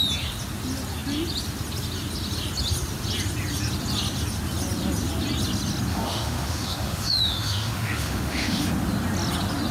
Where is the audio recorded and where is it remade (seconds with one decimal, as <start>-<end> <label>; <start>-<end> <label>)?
0.0-5.9 recorded; 5.9-8.7 remade; 8.7-9.7 recorded